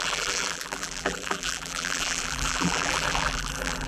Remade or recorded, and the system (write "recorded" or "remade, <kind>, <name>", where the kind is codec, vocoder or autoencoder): remade, vocoder, BigVGAN v2